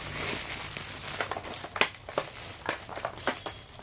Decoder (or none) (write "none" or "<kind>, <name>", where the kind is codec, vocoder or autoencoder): none